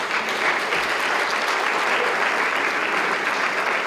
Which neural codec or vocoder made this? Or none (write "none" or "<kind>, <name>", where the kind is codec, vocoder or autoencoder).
none